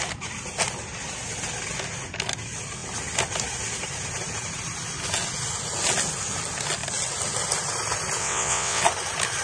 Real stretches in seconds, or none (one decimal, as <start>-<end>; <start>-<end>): 0.0-8.2; 8.8-9.4